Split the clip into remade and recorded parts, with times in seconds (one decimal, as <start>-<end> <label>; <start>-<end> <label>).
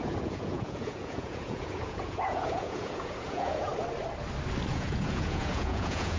0.0-3.7 remade; 3.7-4.7 recorded; 4.7-6.2 remade